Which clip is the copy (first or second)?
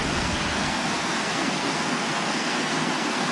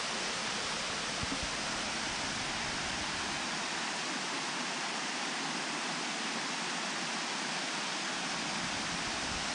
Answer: first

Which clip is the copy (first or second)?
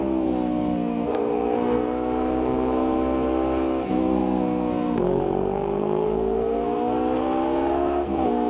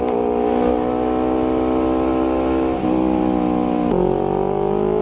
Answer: first